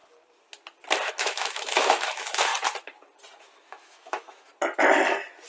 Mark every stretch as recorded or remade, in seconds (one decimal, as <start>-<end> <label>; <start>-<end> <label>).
0.0-1.1 recorded; 1.1-2.5 remade; 2.5-3.4 recorded; 3.4-4.5 remade; 4.5-5.5 recorded